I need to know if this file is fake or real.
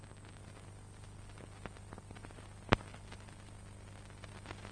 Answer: real